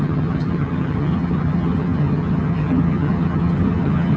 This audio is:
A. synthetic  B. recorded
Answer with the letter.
A